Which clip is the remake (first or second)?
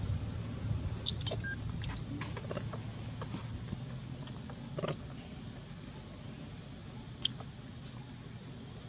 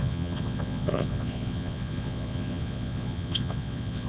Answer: second